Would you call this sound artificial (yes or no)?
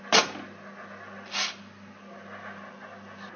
no